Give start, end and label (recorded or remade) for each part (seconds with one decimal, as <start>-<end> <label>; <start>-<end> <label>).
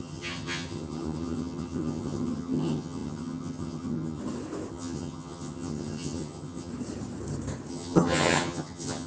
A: 0.0-4.2 remade; 4.2-4.7 recorded; 4.7-6.7 remade; 6.7-7.7 recorded; 7.7-9.1 remade